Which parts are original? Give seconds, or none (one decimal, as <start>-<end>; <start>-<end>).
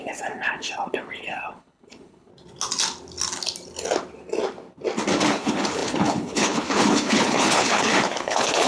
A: 2.3-5.2